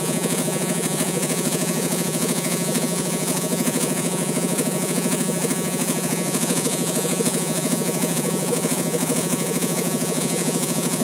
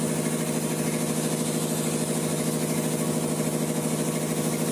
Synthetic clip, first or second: first